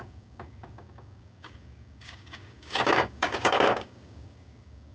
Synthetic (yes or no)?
yes